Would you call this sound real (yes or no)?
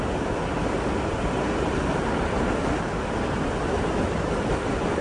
yes